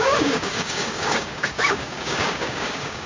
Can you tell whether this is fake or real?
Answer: fake